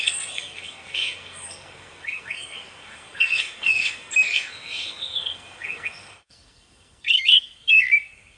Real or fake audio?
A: fake